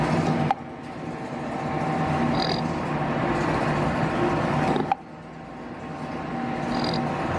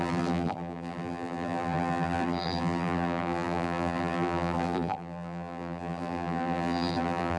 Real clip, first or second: first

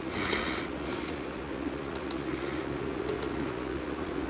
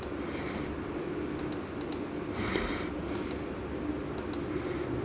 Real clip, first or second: second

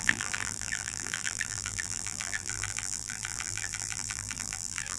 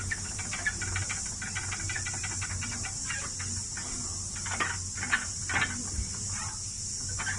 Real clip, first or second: second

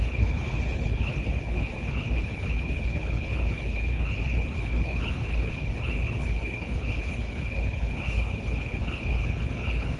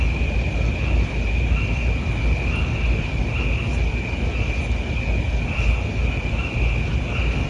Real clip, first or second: second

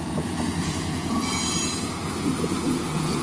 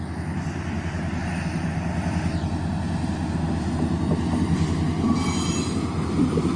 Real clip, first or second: second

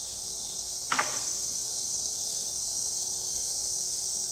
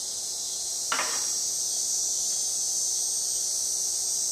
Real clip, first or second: second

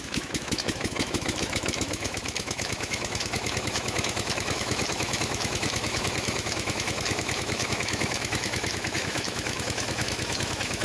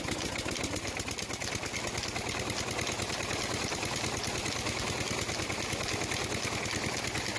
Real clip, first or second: second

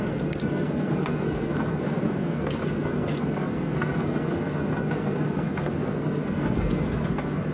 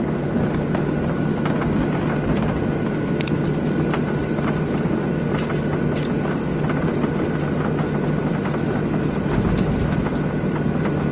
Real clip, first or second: second